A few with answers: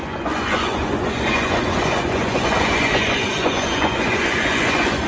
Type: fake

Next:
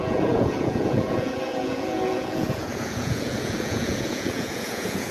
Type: fake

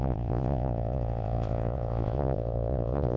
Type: fake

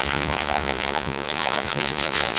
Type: fake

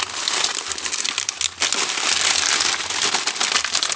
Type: real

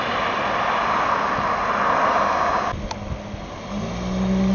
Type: real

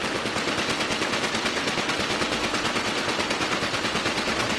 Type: real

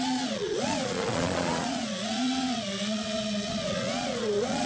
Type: fake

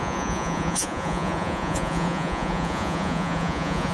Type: fake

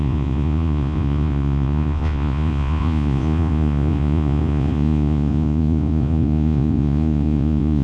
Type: fake